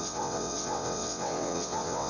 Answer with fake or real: fake